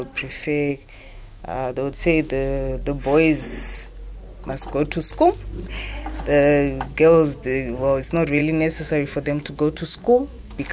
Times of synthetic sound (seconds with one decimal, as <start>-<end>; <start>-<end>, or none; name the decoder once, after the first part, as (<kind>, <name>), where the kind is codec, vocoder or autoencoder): 0.7-2.7 (autoencoder, DAC-VAE); 8.4-10.7